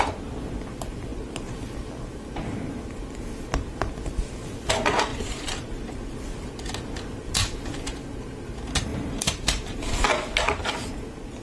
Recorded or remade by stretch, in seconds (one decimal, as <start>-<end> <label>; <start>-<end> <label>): 0.0-5.1 recorded; 5.1-5.9 remade; 5.9-8.9 recorded; 8.9-9.9 remade; 9.9-11.4 recorded